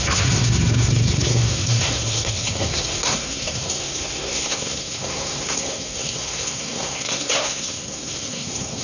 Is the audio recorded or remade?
remade